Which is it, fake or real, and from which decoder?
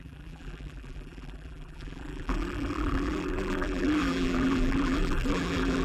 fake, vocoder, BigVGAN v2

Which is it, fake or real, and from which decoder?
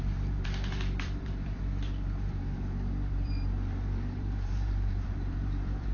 fake, vocoder, BigVGAN v2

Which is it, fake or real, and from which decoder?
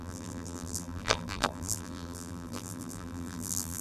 fake, vocoder, BigVGAN v2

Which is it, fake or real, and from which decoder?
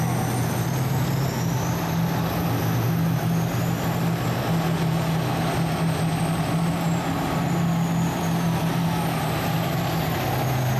real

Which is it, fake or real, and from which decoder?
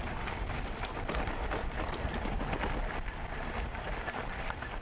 fake, vocoder, BigVGAN v2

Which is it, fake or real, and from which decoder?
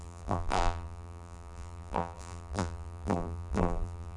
fake, vocoder, BigVGAN v2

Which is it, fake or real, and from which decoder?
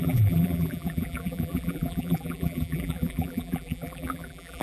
fake, vocoder, BigVGAN v2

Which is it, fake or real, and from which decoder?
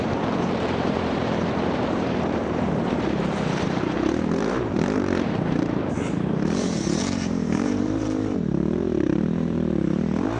fake, vocoder, BigVGAN v2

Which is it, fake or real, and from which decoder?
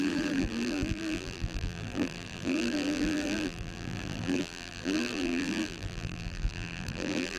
fake, vocoder, BigVGAN v2